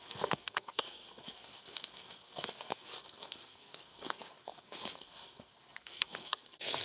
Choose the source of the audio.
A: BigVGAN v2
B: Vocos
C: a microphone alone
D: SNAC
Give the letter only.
D